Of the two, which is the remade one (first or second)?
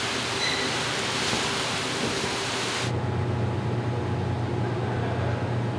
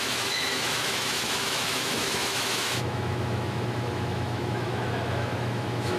second